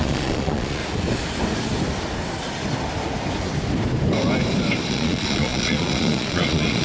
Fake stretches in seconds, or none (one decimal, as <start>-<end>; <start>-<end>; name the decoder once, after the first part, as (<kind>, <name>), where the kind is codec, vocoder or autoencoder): 0.0-0.8 (vocoder, Vocos); 4.9-6.8